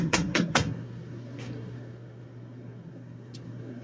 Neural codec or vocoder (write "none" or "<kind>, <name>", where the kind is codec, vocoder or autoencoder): codec, SNAC